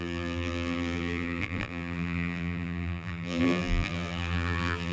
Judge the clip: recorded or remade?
remade